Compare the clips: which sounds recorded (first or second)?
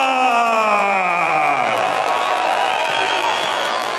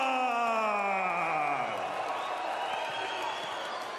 second